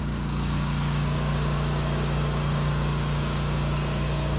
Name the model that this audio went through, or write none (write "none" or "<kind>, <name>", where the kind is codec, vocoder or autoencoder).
codec, DAC